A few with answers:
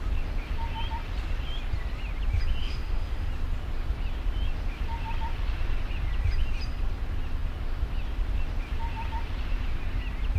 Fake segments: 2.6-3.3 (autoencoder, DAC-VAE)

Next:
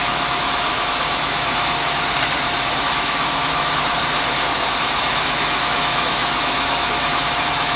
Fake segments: 0.0-1.8 (autoencoder, DAC-VAE); 2.8-4.0; 4.8-7.8

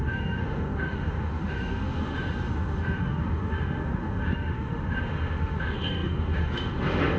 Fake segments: 0.0-7.2 (autoencoder, DAC-VAE)

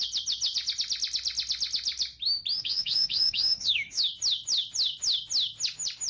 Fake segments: 2.6-4.0 (autoencoder, DAC-VAE)

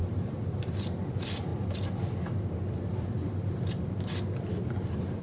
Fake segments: none

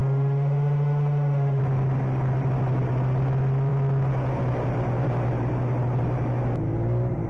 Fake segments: 0.0-1.6 (autoencoder, DAC-VAE)